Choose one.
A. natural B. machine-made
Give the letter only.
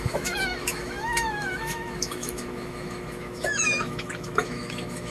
B